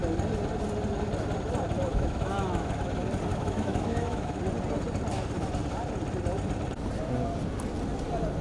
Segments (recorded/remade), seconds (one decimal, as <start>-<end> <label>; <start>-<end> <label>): 0.0-1.9 recorded; 1.9-2.7 remade; 2.7-3.3 recorded; 3.3-4.4 remade; 4.4-8.4 recorded